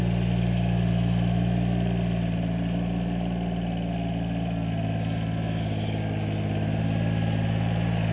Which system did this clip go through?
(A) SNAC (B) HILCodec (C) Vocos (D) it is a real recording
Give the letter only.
D